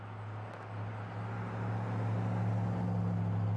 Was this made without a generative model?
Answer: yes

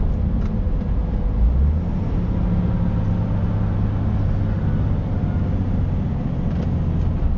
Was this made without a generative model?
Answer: yes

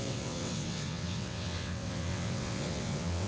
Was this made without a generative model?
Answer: no